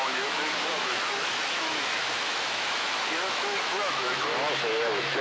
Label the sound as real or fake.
fake